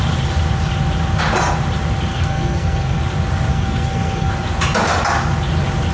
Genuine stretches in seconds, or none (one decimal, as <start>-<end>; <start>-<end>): 0.0-2.1; 3.0-3.5; 4.3-5.9